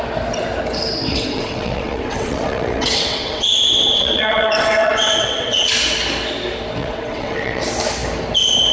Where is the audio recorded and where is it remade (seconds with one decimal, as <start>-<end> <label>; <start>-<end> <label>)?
0.0-1.1 recorded; 1.1-5.7 remade; 5.7-6.8 recorded; 6.8-7.6 remade; 7.6-8.7 recorded